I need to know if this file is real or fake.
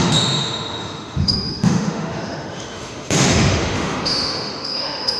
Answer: fake